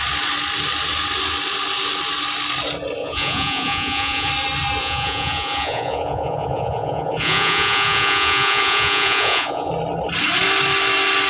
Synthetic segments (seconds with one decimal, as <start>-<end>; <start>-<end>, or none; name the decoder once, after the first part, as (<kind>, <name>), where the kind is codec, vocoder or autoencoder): 3.0-4.3 (vocoder, Vocos); 4.8-9.7

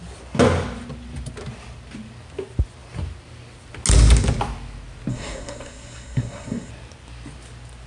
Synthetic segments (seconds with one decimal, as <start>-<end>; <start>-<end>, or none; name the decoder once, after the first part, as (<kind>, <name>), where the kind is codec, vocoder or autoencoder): 5.1-6.7 (codec, SNAC)